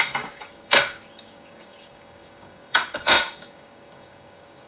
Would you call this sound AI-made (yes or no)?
yes